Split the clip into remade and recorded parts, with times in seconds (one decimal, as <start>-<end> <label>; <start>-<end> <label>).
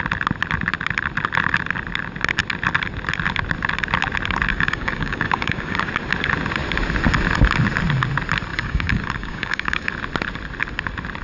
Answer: 0.0-4.5 recorded; 4.5-5.9 remade; 5.9-8.5 recorded; 8.5-9.9 remade; 9.9-11.2 recorded